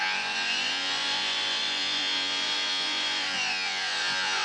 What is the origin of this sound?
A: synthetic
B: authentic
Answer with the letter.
A